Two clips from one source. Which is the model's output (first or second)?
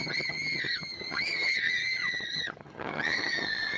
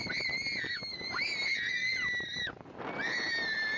first